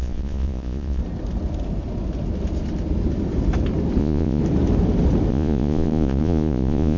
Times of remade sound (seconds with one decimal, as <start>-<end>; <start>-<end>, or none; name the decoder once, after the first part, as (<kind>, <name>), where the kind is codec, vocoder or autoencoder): 0.0-1.0 (vocoder, Vocos); 4.0-4.4; 5.3-7.0